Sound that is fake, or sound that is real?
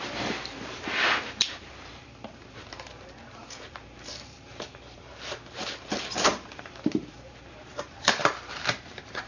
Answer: fake